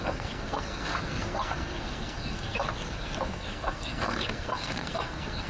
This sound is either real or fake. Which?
fake